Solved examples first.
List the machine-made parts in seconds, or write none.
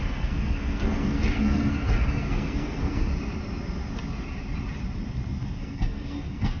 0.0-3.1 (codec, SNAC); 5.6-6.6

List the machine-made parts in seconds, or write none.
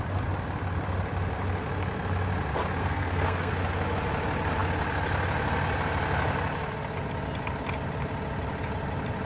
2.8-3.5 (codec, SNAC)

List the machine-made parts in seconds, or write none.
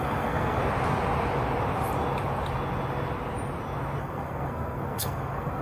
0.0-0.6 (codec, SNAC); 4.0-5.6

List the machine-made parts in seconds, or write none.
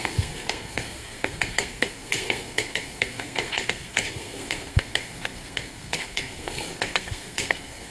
0.0-7.9 (codec, SNAC)